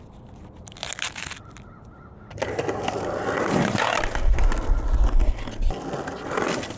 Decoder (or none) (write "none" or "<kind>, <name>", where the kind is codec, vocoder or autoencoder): none